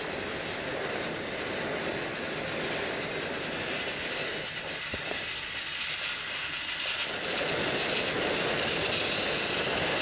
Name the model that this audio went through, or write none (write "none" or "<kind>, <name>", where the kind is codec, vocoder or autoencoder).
none